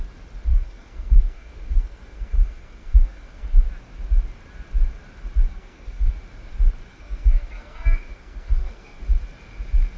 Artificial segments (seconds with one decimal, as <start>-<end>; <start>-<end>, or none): 0.5-3.7; 5.5-6.1; 6.9-9.0